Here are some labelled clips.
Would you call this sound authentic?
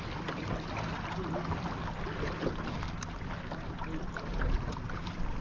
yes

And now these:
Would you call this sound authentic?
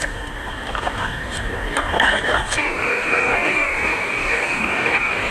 no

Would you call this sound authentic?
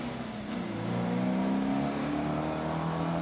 yes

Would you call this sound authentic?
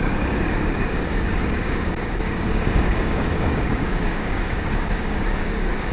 no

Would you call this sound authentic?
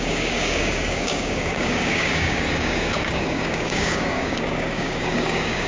no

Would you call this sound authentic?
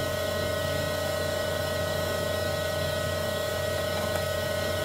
no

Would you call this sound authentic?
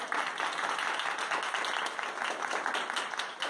yes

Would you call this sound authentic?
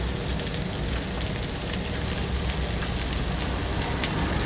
yes